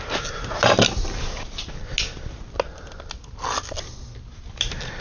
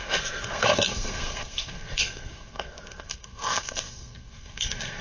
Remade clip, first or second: second